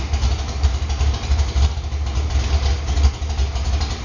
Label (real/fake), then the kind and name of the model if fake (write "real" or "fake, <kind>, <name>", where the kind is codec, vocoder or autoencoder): real